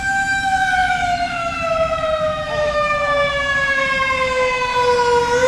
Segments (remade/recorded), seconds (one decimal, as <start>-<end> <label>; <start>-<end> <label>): 0.0-4.7 remade; 4.7-5.5 recorded